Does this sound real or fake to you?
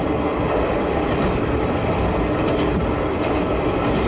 fake